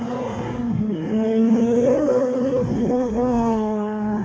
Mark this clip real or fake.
fake